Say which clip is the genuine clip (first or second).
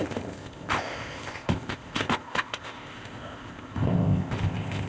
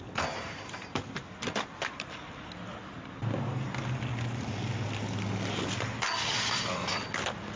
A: second